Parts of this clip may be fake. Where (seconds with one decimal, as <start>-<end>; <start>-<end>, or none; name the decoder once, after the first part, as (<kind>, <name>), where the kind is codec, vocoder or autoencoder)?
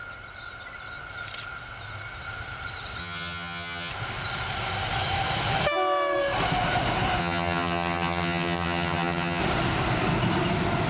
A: 3.0-3.9 (vocoder, HiFi-GAN); 7.2-9.4